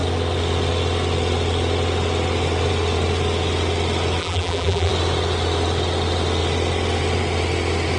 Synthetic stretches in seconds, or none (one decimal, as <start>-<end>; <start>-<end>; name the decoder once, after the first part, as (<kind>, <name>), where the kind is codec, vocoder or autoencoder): 4.2-4.9 (vocoder, BigVGAN v2)